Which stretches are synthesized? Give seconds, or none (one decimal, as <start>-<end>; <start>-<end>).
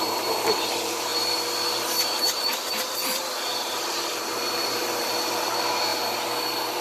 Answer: 0.0-6.8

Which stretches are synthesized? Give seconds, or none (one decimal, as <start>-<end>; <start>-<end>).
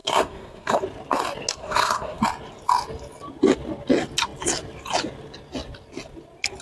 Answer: 0.0-0.8; 1.6-2.2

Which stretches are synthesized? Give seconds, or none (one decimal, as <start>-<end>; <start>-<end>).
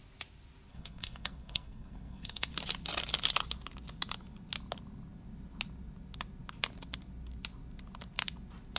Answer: 0.7-2.5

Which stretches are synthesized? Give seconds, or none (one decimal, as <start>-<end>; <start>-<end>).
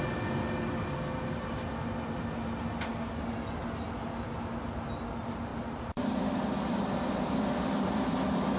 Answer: none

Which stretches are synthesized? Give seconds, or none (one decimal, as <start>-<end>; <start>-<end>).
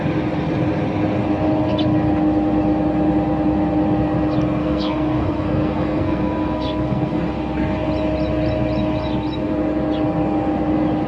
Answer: 4.6-7.2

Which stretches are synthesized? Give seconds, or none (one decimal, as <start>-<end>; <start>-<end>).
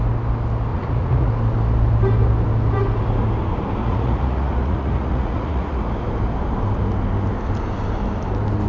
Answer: 0.7-1.3; 3.8-5.9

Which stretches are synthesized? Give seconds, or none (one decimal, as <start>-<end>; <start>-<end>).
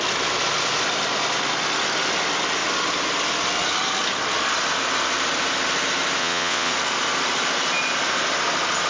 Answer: 6.2-6.7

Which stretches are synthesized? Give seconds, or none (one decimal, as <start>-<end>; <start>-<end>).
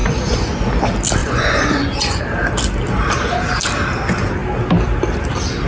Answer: 0.0-0.7; 1.2-2.2